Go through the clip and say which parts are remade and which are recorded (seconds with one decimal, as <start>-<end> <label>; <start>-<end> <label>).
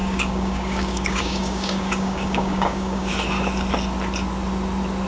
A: 0.0-3.1 remade; 3.1-5.1 recorded